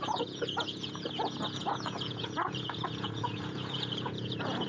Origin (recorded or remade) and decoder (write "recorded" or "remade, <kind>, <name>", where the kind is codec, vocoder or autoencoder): remade, vocoder, Vocos